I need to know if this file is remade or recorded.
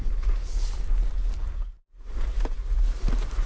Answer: recorded